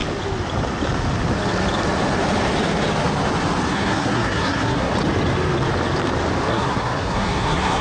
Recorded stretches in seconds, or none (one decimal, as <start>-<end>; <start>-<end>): 0.0-3.7; 4.9-6.5